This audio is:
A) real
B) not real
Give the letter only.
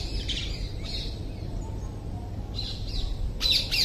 A